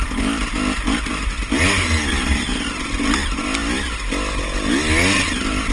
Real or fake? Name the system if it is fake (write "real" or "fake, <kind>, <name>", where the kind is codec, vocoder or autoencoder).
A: real